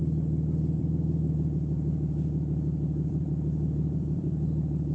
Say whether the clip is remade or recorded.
remade